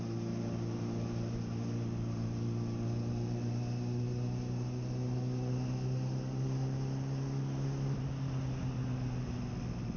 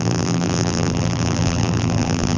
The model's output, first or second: second